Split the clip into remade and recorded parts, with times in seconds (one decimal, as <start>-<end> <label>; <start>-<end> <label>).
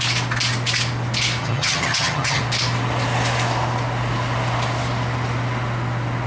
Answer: 0.0-1.4 recorded; 1.4-2.4 remade; 2.4-6.3 recorded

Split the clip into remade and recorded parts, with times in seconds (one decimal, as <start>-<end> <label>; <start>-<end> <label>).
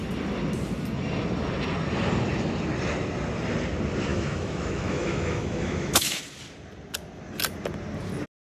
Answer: 0.0-4.1 recorded; 4.1-6.2 remade; 6.2-8.6 recorded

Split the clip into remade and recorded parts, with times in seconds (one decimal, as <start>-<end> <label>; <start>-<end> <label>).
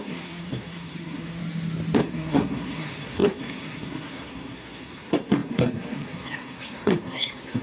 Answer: 0.0-1.4 remade; 1.4-2.0 recorded; 2.0-7.6 remade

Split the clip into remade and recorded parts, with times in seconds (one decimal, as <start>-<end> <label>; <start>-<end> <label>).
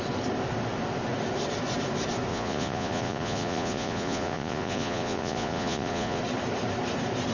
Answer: 0.0-2.3 recorded; 2.3-6.2 remade; 6.2-7.3 recorded